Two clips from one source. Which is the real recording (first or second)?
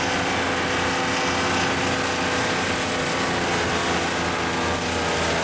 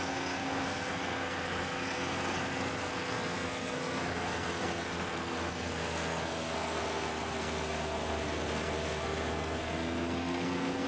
first